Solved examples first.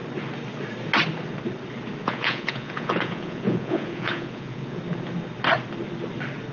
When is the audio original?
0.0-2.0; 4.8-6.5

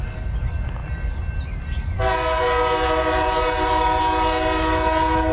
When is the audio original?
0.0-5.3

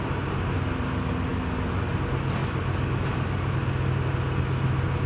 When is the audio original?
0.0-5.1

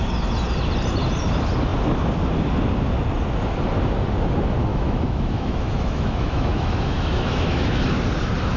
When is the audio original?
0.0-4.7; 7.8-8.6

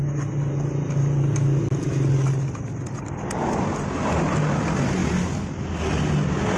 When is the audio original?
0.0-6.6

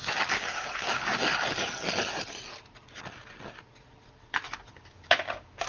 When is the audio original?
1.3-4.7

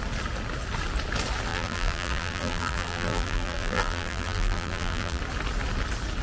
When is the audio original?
0.0-1.5; 5.2-6.2